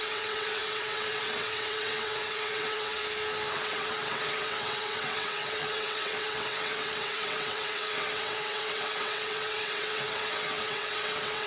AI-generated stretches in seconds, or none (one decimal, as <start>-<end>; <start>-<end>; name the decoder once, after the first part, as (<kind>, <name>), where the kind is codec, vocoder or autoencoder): 0.0-3.0 (vocoder, WaveNeXt); 3.5-11.5